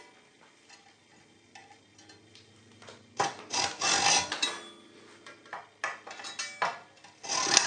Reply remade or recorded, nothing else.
recorded